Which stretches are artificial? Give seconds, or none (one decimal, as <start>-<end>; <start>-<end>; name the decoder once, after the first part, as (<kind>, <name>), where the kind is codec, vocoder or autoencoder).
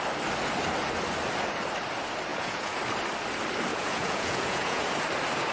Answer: 2.3-2.8 (vocoder, Vocos); 3.7-4.9